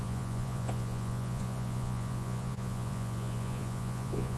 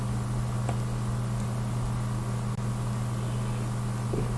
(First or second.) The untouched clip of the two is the second